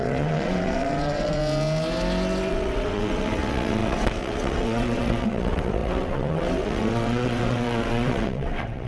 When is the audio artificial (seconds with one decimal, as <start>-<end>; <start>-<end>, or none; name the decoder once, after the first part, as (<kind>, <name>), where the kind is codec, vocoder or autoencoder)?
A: 0.0-1.4 (vocoder, WaveNeXt); 2.5-8.9